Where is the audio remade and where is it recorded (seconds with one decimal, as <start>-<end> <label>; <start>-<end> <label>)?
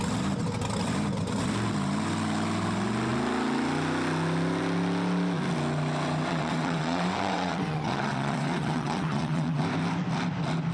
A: 0.0-6.3 recorded; 6.3-9.6 remade; 9.6-10.7 recorded